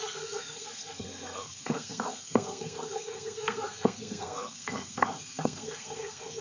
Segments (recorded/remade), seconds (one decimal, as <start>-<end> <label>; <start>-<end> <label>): 0.0-6.4 remade